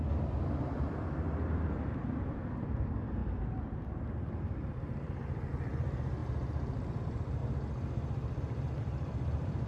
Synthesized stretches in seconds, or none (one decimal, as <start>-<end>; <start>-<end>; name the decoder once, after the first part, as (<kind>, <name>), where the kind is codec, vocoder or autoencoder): 0.0-6.2 (vocoder, BigVGAN v2); 7.0-7.4; 8.8-9.7

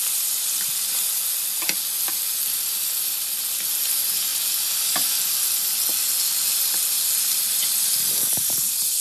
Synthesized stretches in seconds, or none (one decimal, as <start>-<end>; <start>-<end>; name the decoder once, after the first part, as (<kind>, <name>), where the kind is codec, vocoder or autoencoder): none

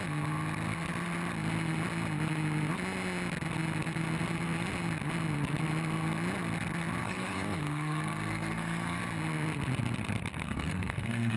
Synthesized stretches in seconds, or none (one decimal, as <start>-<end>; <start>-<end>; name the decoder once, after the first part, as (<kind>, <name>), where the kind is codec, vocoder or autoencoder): 7.0-9.0 (codec, SNAC); 10.4-11.4

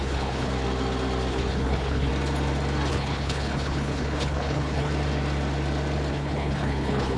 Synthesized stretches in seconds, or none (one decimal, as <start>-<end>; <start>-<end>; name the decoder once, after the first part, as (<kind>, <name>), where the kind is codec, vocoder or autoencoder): 0.0-0.5 (codec, HILCodec); 1.3-2.1; 2.9-4.9; 6.1-7.2

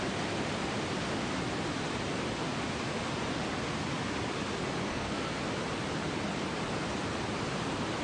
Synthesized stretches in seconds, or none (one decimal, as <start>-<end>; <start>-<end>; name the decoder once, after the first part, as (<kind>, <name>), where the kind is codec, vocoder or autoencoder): 4.9-5.4 (codec, SNAC)

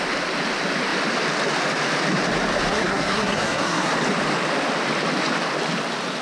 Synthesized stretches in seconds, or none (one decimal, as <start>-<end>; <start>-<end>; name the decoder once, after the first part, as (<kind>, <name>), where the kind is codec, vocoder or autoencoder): 2.7-3.9 (codec, SNAC)

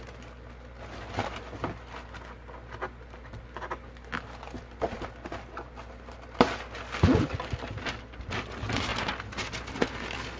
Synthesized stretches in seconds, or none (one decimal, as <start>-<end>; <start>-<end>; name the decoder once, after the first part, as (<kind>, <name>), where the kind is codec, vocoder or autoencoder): none

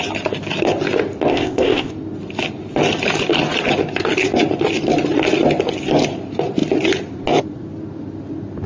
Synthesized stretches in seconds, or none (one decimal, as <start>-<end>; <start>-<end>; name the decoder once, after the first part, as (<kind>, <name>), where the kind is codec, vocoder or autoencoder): 1.3-1.9 (codec, ZipCodec)